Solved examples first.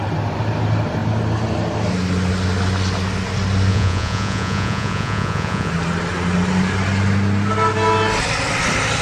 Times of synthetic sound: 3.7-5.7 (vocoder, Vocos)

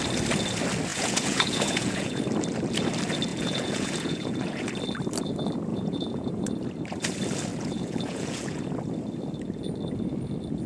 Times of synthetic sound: 0.9-2.2 (vocoder, Vocos); 3.3-4.7; 5.7-6.3; 7.5-8.6

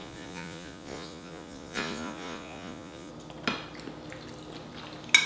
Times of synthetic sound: 0.0-3.1 (vocoder, Vocos)

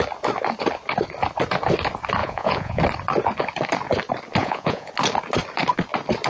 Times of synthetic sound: 2.2-2.8 (vocoder, Vocos); 4.4-4.9

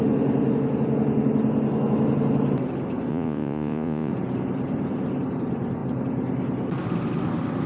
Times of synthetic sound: 3.1-4.1 (vocoder, Vocos)

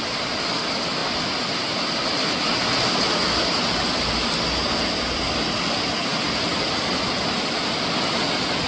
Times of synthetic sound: none